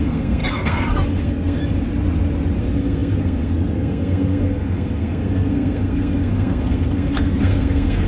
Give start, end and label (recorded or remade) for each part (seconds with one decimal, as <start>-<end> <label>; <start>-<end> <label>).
0.0-1.6 remade; 1.6-2.6 recorded; 2.6-8.1 remade